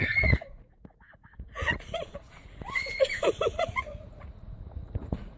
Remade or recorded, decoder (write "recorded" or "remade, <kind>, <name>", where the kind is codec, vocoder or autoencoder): remade, vocoder, Vocos